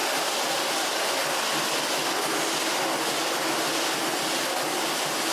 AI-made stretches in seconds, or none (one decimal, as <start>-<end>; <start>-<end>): none